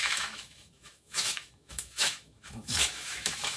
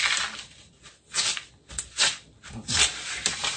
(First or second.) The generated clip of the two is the first